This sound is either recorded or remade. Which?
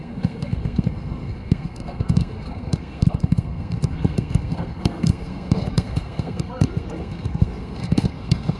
remade